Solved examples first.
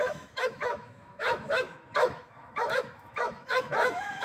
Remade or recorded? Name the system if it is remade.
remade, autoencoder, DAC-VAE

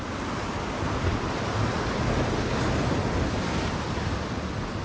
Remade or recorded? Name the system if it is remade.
recorded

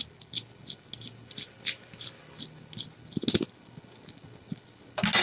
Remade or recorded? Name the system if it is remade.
recorded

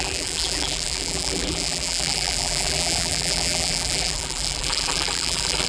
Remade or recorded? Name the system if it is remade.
remade, vocoder, BigVGAN v2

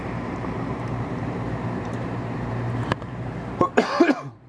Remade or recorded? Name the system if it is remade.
remade, vocoder, BigVGAN v2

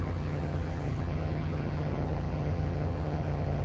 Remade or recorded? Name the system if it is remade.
remade, vocoder, HiFi-GAN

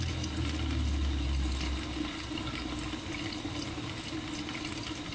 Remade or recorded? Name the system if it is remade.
recorded